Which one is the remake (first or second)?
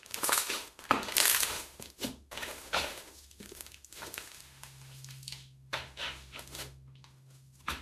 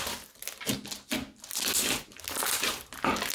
first